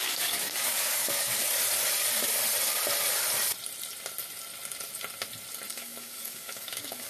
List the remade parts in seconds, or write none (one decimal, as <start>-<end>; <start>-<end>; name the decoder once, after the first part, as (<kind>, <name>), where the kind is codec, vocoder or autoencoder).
0.0-1.4 (codec, DAC); 5.7-7.1